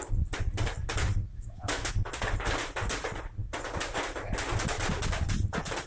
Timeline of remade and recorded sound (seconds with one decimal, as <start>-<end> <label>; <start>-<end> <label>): 0.0-1.3 recorded; 1.3-1.9 remade; 1.9-5.9 recorded